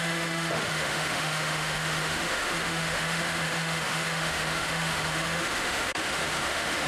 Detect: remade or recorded remade